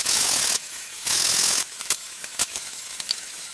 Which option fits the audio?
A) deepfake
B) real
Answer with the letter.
A